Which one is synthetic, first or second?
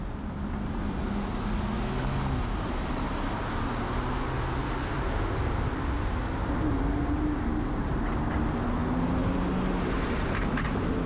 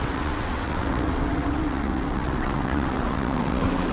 second